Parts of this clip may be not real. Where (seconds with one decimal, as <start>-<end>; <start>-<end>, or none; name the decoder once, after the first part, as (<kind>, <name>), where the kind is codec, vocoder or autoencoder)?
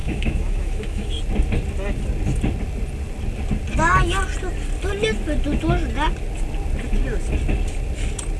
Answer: 0.0-1.1 (autoencoder, DAC-VAE)